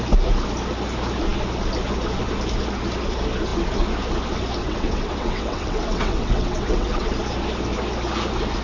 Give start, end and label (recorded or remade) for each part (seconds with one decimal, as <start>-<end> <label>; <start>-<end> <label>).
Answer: 0.0-4.6 recorded; 4.6-7.1 remade; 7.1-8.6 recorded